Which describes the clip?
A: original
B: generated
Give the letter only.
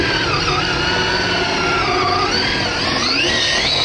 A